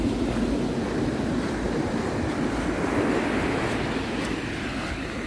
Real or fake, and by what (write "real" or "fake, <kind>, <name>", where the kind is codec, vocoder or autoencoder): real